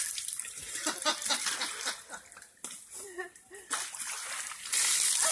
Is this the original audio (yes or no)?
yes